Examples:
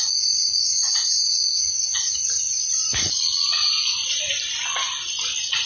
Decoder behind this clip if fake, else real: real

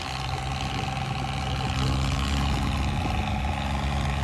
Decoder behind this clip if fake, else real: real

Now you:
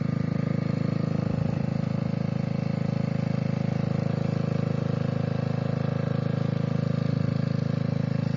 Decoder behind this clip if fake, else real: real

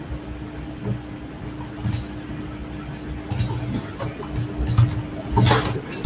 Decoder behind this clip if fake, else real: real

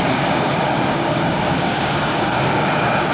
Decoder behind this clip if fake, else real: fake, codec, DAC